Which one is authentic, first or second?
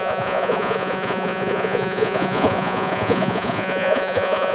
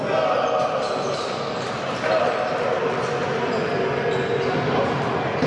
second